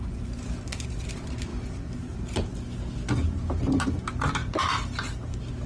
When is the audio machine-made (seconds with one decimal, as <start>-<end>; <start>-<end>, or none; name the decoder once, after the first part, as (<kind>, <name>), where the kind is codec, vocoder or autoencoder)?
4.4-5.7 (vocoder, BigVGAN v2)